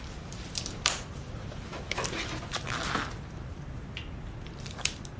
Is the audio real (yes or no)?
no